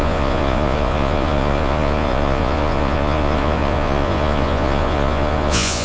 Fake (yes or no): yes